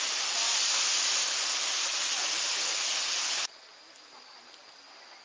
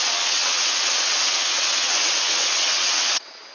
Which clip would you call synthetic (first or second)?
second